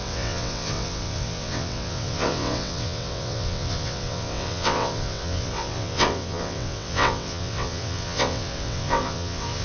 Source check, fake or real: fake